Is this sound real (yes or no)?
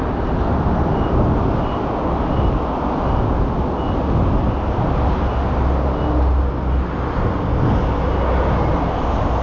yes